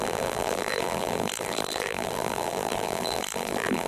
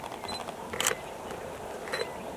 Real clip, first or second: second